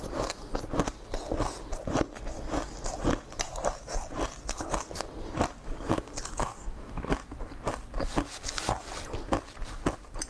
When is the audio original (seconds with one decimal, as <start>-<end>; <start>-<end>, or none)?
0.0-6.4; 7.1-10.3